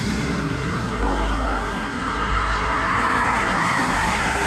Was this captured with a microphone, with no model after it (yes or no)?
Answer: no